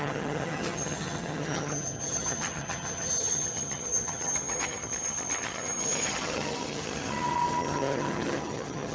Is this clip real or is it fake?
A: fake